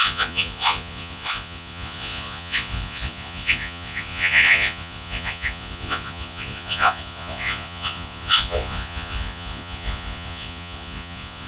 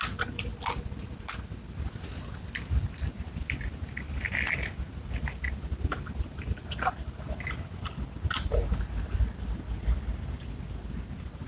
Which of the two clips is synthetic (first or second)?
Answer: first